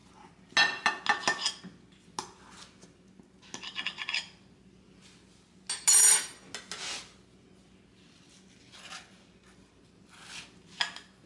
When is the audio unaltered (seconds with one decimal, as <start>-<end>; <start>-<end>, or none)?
0.0-11.3